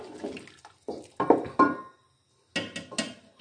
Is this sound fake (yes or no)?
no